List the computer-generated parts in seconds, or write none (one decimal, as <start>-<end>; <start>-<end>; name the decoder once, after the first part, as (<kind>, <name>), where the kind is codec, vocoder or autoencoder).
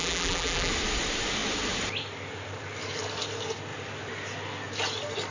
0.0-0.7 (vocoder, BigVGAN v2)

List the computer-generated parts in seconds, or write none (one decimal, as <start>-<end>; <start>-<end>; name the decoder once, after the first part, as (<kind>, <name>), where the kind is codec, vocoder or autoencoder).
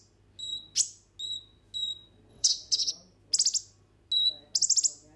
2.3-2.9 (vocoder, WaveNeXt)